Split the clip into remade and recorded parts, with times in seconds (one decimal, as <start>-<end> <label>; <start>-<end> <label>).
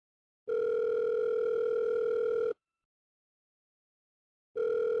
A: 0.0-1.2 recorded; 1.2-2.9 remade; 2.9-5.0 recorded